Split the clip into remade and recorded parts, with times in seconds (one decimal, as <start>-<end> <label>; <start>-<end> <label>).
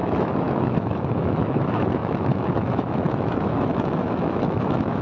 0.0-5.0 remade